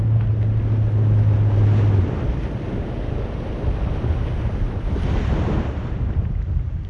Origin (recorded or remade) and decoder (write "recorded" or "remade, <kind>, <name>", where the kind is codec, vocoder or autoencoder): recorded